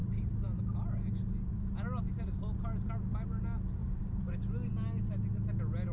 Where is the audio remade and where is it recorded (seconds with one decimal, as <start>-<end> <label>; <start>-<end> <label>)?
0.0-0.6 remade; 0.6-3.8 recorded; 3.8-4.3 remade; 4.3-5.9 recorded